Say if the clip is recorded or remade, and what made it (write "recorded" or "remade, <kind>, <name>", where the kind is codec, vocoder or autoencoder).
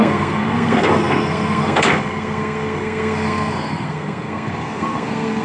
remade, codec, SNAC